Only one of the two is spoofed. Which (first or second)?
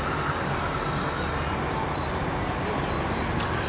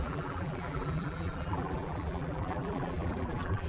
second